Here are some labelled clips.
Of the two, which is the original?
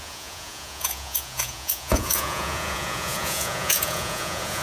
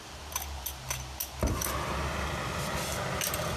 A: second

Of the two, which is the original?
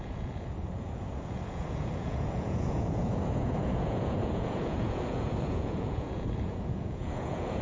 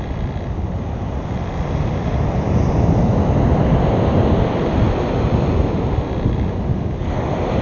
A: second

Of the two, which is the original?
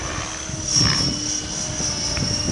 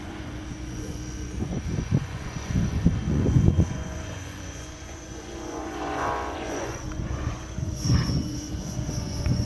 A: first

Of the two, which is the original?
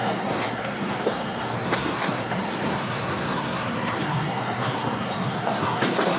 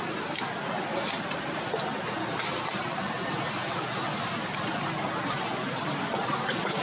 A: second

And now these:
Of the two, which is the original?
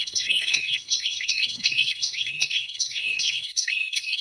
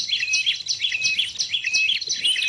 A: second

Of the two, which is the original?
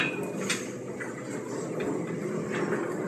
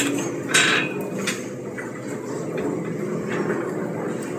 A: second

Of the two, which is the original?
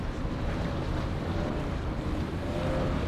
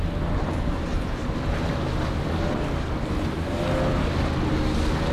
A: second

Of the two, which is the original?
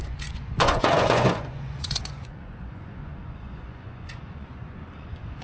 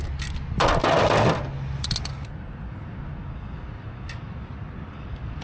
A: second